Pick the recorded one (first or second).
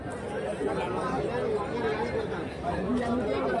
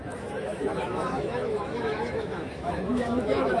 first